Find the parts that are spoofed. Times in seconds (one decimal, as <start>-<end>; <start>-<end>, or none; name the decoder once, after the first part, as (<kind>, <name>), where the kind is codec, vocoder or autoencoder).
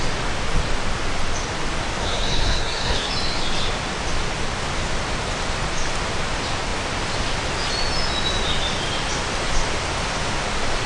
2.0-3.1 (codec, SNAC)